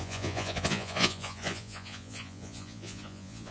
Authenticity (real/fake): fake